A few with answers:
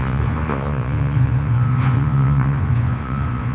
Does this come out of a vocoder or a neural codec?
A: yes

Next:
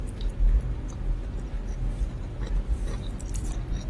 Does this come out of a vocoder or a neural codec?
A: no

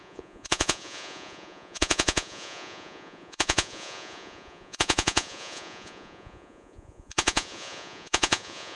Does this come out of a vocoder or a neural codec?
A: yes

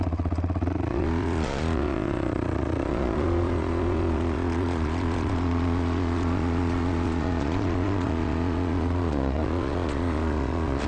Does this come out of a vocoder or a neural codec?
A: yes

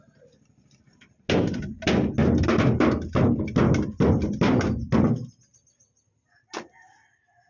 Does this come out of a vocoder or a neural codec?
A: no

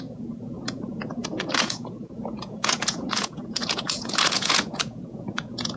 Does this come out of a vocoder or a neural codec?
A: yes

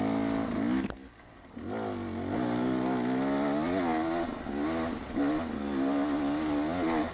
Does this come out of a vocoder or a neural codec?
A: no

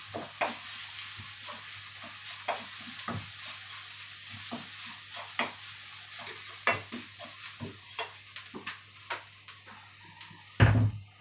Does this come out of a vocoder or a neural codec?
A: no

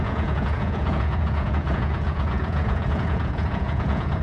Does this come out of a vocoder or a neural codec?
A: yes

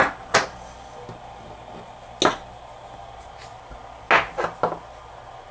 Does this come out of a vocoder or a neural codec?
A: no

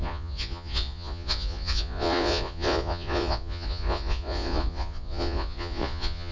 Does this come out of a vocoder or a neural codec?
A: yes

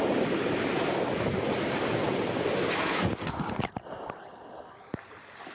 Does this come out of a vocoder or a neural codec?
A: no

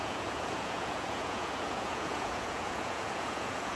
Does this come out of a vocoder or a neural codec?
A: yes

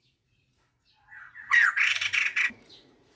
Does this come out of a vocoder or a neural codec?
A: yes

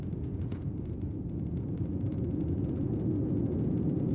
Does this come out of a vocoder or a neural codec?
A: yes